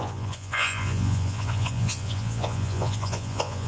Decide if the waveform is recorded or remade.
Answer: remade